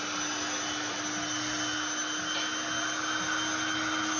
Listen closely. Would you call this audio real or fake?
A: real